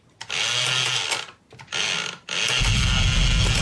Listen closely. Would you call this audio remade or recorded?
recorded